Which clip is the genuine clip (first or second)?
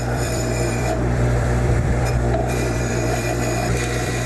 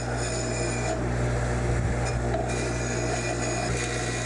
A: second